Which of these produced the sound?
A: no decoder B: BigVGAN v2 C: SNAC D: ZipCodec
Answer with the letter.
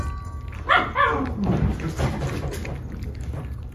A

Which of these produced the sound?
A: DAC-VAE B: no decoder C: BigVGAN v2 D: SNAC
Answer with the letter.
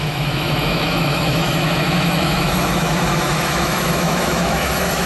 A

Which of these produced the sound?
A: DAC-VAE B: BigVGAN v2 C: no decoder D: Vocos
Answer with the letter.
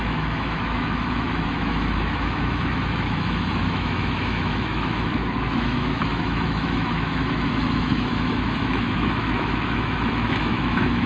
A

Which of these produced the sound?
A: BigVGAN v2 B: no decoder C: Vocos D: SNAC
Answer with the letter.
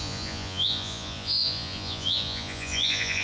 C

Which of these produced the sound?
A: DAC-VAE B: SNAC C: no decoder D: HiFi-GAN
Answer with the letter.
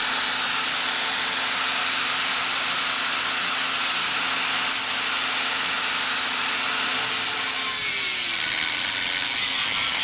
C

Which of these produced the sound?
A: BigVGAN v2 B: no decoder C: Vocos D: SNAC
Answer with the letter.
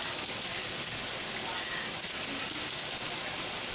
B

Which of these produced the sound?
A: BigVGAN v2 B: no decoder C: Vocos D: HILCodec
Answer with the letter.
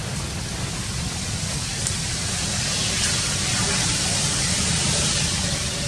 B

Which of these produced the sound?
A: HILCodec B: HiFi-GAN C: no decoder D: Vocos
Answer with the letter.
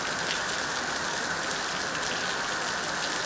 C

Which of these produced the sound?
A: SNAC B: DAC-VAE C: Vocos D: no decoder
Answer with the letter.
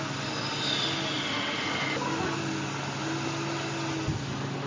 D